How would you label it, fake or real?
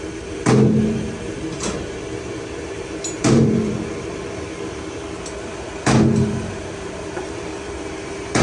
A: fake